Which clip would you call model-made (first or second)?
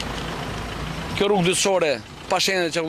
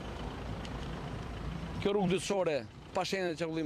second